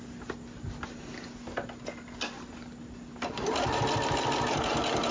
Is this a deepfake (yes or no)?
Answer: no